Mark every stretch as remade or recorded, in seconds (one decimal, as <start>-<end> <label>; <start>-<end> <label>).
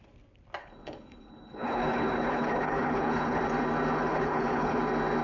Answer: 0.0-0.6 recorded; 0.6-3.4 remade; 3.4-4.1 recorded; 4.1-4.8 remade; 4.8-5.2 recorded